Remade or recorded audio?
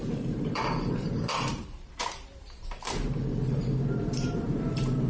remade